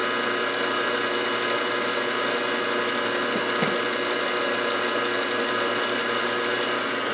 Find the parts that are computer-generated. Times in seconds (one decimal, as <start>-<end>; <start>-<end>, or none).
4.3-7.1